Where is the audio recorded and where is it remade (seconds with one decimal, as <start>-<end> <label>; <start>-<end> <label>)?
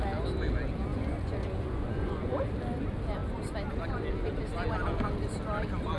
0.0-0.9 recorded; 0.9-2.4 remade; 2.4-6.0 recorded